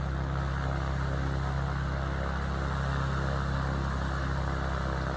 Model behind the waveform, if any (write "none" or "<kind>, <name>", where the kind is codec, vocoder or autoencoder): none